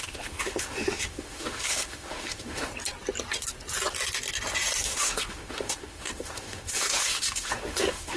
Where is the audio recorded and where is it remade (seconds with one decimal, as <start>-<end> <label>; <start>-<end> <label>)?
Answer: 0.0-2.7 remade; 2.7-4.8 recorded; 4.8-8.2 remade